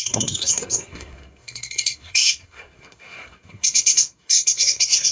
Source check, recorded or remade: remade